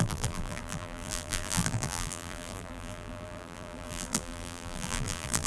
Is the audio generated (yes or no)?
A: yes